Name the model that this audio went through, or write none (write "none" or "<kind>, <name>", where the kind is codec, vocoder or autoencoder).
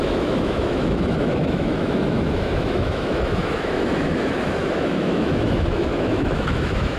autoencoder, DAC-VAE